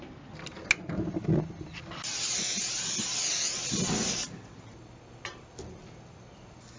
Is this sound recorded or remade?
recorded